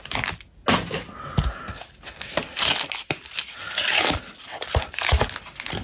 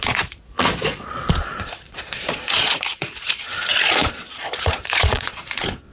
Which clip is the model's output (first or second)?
second